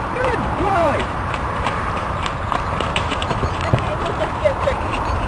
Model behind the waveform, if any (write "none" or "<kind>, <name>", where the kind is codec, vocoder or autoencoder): vocoder, BigVGAN v2